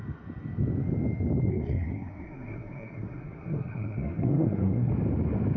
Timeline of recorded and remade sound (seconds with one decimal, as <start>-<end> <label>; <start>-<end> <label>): 0.0-1.5 recorded; 1.5-4.9 remade; 4.9-5.6 recorded